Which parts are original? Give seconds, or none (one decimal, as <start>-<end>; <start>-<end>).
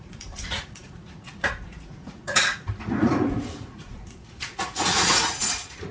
none